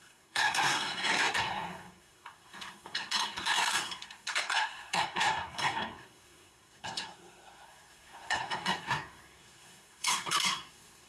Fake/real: fake